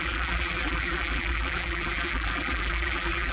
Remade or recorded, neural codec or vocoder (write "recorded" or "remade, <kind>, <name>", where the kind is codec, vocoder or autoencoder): remade, vocoder, BigVGAN v2